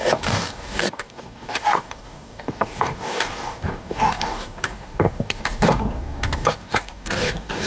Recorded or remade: remade